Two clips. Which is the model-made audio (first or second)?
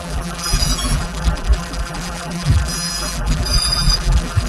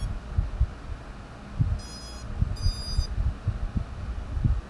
first